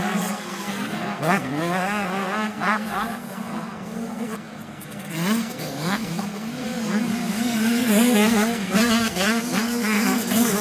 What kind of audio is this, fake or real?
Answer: fake